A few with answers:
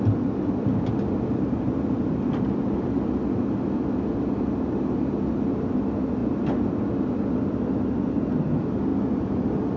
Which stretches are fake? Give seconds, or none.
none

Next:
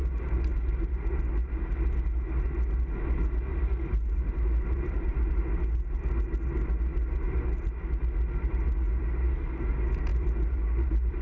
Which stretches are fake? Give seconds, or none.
0.0-0.9 (vocoder, BigVGAN v2); 3.5-5.4; 10.1-11.2

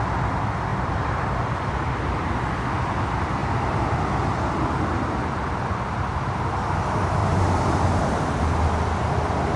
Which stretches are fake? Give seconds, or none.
0.7-2.3 (vocoder, BigVGAN v2); 7.2-8.0

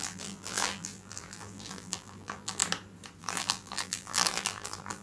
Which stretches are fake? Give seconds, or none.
0.0-2.6 (vocoder, BigVGAN v2); 3.2-5.0

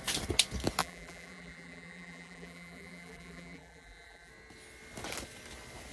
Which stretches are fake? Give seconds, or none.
0.8-4.3 (vocoder, BigVGAN v2)

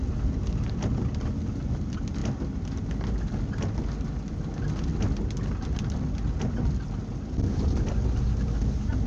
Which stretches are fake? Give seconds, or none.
none